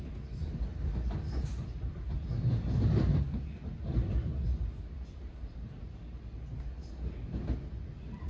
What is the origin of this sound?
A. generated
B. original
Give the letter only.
B